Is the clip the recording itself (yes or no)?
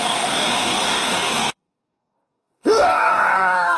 no